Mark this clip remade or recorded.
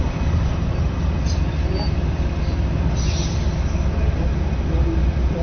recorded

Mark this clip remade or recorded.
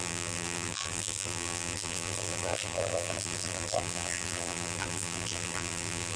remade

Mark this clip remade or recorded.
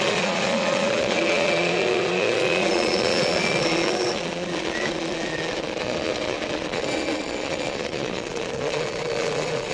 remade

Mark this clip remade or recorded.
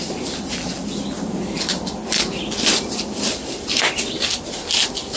recorded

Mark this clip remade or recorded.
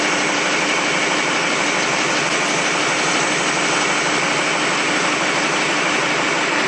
remade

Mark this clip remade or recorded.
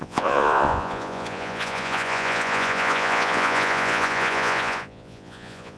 remade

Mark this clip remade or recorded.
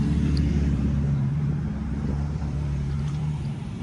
remade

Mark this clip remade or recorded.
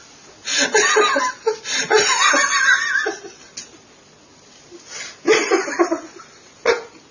recorded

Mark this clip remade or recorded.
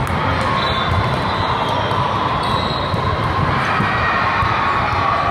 recorded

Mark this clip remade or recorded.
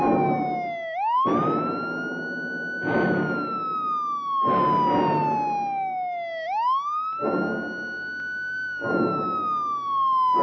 recorded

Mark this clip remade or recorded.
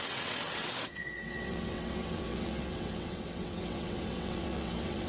remade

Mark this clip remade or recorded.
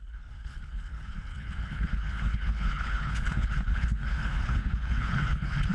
remade